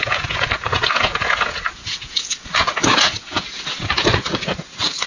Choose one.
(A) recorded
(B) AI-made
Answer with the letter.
B